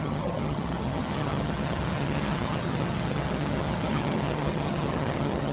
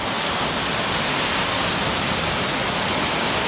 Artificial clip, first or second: first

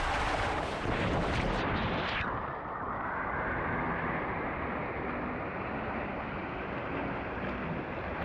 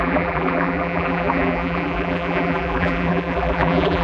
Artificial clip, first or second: second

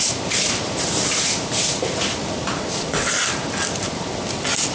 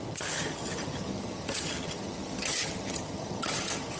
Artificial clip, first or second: second